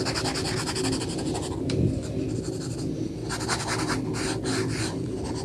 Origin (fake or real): real